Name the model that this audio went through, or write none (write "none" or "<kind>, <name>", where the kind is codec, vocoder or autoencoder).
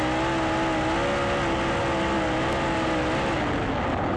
none